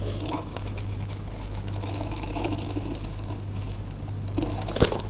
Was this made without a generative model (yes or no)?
no